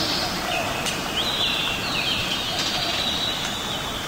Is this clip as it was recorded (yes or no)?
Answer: yes